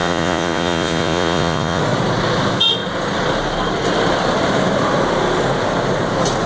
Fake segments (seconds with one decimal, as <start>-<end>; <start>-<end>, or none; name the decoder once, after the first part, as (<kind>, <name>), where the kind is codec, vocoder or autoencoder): 0.0-1.8 (vocoder, Vocos)